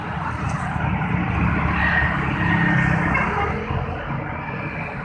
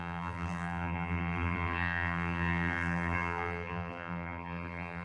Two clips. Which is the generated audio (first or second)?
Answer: second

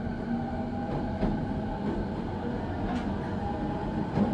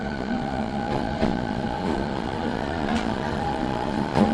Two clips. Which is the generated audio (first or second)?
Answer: second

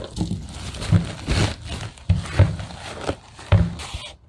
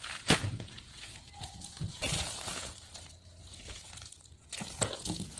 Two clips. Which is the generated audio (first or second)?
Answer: second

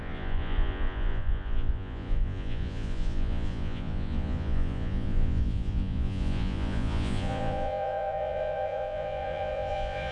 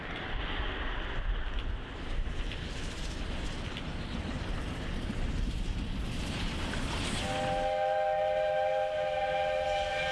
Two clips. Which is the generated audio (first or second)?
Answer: first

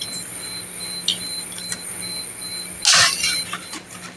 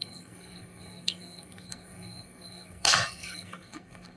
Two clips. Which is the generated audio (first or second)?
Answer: second